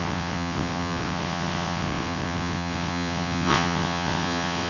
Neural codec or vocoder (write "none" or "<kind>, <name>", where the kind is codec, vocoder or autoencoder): vocoder, WaveNeXt